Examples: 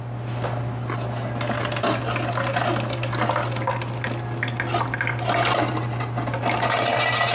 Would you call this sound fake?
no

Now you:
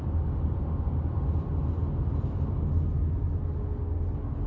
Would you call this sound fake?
no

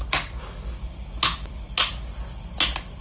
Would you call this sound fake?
no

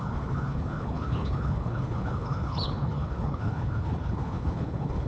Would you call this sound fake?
yes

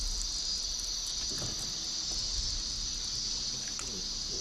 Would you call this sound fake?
no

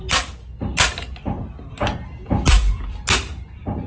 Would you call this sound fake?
no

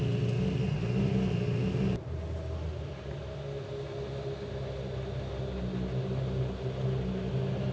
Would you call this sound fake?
no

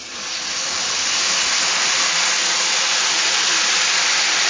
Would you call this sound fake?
no